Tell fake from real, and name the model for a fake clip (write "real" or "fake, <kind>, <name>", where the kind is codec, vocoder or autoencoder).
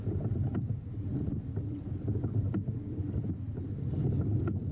fake, vocoder, BigVGAN v2